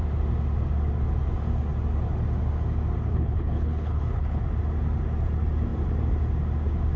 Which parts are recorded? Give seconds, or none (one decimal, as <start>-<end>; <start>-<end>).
0.0-3.1; 4.4-7.0